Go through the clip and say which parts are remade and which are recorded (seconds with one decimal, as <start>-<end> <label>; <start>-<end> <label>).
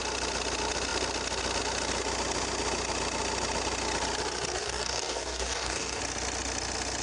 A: 0.0-4.6 recorded; 4.6-6.0 remade; 6.0-7.0 recorded